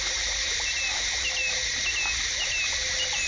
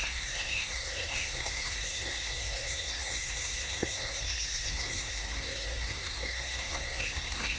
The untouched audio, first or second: first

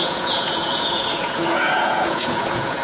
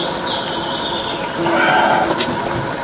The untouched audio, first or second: second